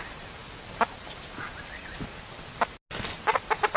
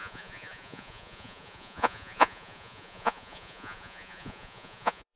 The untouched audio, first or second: first